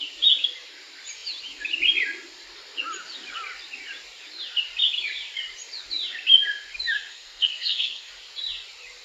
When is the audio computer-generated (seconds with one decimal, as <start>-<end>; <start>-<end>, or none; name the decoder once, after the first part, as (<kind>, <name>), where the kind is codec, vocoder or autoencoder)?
7.1-8.1 (codec, SNAC)